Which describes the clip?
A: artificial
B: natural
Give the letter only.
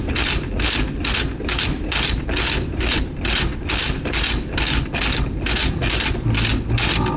B